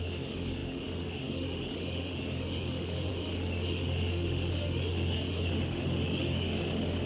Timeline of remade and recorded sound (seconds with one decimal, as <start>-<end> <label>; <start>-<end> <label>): 0.0-7.1 remade